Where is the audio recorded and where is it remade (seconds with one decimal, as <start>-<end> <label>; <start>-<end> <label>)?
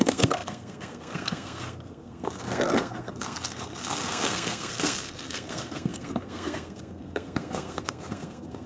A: 0.0-8.7 remade